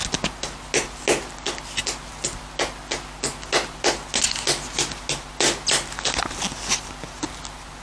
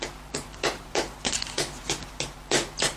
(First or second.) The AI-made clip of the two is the second